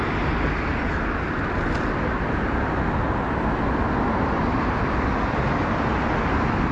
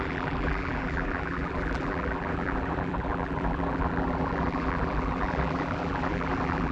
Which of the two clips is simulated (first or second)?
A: second